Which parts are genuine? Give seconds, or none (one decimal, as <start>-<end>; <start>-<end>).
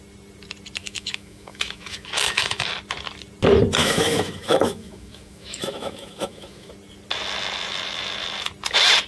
0.0-0.8; 2.7-3.8; 6.7-9.1